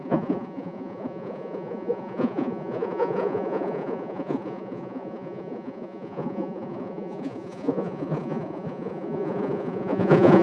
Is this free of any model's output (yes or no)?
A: no